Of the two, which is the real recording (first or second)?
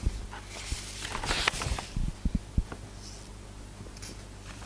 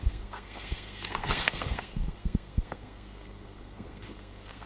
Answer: first